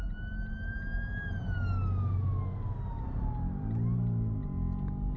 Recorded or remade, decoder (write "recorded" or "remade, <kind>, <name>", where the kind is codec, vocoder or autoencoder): recorded